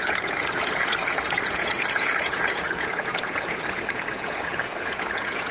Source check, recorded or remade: remade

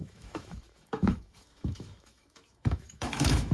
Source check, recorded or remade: remade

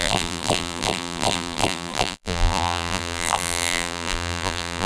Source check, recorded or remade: remade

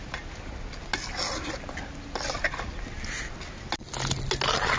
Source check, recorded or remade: recorded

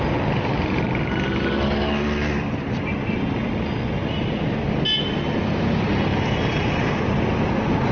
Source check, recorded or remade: recorded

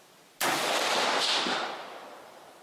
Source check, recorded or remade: recorded